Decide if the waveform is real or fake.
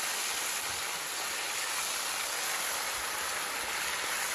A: real